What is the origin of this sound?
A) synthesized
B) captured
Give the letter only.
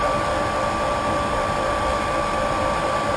B